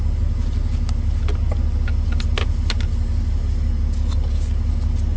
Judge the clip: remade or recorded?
recorded